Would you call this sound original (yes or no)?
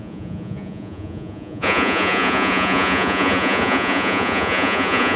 no